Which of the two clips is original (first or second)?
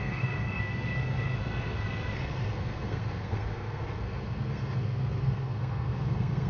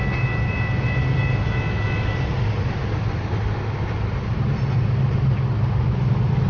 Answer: second